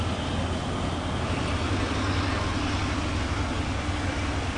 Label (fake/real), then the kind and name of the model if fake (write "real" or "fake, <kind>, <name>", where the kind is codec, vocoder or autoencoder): real